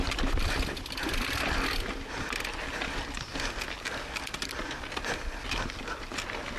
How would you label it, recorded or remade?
recorded